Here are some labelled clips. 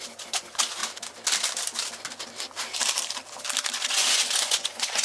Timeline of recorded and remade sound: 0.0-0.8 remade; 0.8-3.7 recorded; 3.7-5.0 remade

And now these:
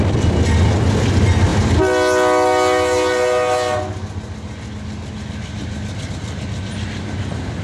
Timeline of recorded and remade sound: 0.0-7.6 recorded

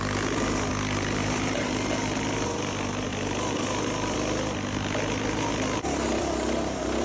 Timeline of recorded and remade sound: 0.0-1.2 recorded; 1.2-1.7 remade; 1.7-7.0 recorded

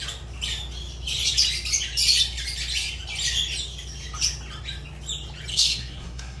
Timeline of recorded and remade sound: 0.0-5.5 recorded; 5.5-6.4 remade

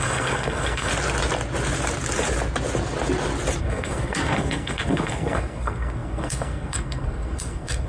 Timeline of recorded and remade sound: 0.0-0.9 remade; 0.9-3.6 recorded; 3.6-7.9 remade

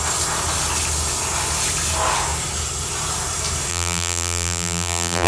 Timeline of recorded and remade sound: 0.0-3.7 recorded; 3.7-5.3 remade

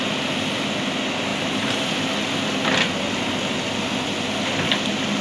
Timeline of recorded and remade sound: 0.0-1.3 recorded; 1.3-1.9 remade; 1.9-5.2 recorded